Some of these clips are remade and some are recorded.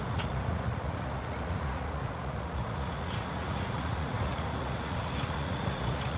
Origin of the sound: remade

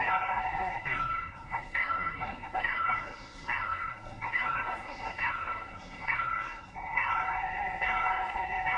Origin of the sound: remade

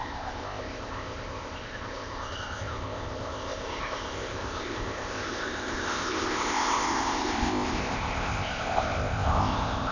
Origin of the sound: remade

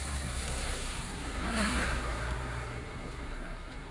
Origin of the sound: remade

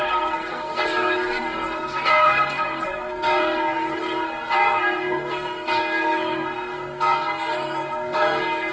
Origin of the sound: remade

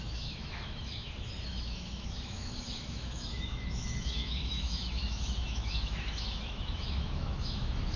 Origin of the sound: remade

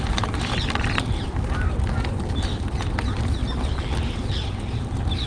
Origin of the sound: remade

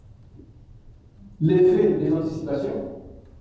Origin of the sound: recorded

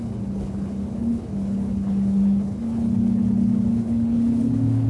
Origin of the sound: remade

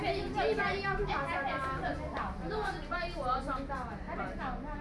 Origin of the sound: recorded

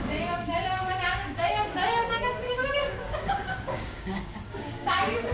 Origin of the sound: remade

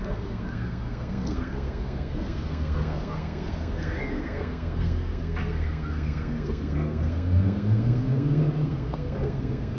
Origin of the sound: remade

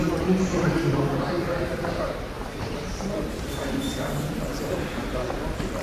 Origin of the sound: remade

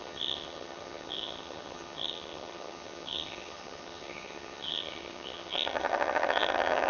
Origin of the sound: remade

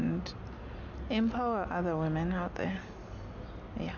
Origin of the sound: recorded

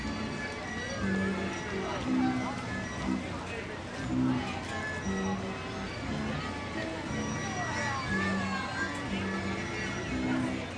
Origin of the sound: recorded